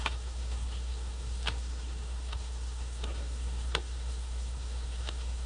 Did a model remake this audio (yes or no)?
yes